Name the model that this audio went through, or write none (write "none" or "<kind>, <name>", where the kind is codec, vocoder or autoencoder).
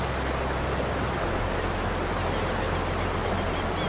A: none